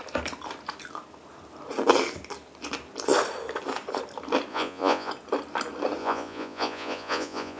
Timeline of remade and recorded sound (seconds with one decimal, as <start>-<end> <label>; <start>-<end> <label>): 0.0-4.5 recorded; 4.5-5.1 remade; 5.1-6.0 recorded; 6.0-7.6 remade